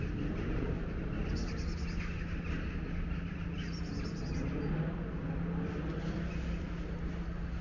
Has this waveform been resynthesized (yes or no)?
no